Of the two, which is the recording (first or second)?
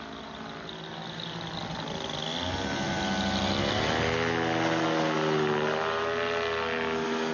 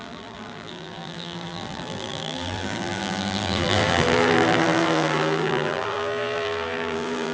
first